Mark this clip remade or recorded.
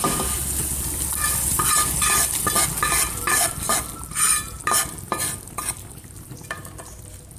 recorded